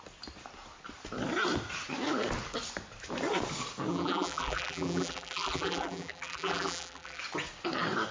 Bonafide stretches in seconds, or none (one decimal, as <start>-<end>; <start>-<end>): 0.0-3.9; 7.2-8.1